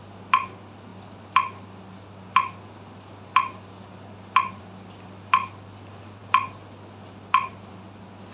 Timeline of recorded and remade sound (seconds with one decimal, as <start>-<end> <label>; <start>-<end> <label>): 0.0-8.3 recorded